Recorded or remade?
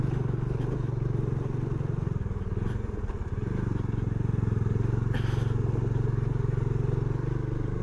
recorded